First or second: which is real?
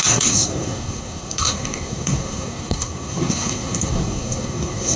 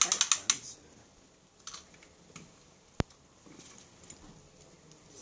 second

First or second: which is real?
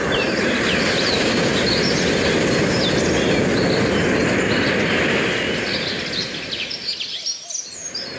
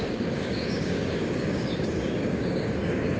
first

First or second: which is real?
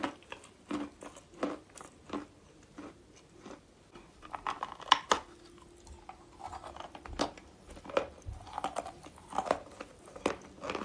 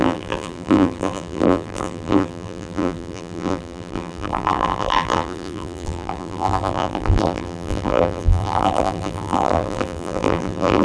first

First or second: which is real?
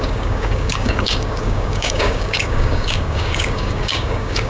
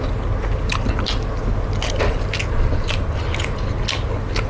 second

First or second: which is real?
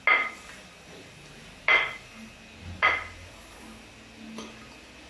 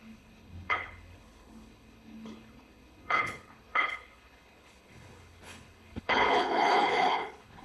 first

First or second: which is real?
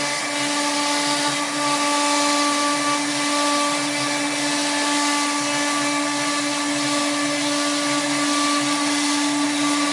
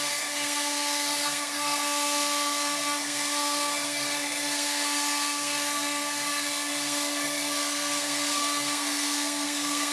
first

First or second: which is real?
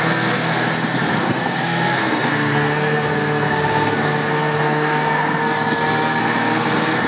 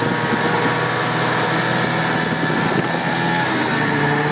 second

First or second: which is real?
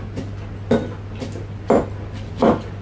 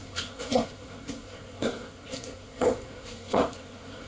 first